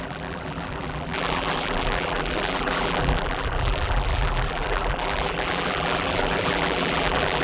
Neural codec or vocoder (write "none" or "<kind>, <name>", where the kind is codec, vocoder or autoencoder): vocoder, BigVGAN v2